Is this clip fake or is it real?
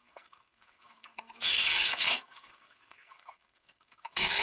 fake